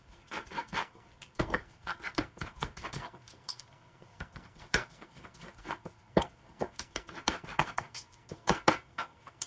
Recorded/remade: remade